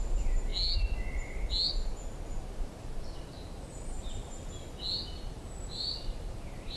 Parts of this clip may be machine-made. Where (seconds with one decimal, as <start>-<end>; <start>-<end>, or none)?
0.0-0.5; 2.4-4.2; 5.3-6.8